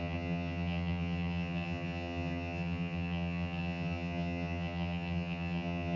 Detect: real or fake fake